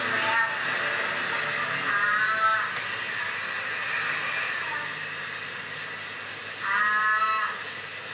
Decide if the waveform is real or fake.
real